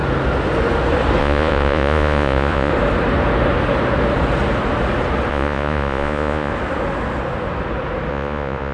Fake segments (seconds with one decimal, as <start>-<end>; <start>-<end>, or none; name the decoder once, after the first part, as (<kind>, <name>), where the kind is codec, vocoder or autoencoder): 1.2-2.7 (vocoder, Vocos); 5.3-6.5; 8.1-8.7